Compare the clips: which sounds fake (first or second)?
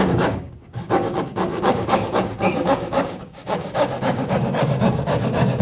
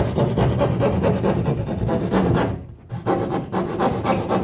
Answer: first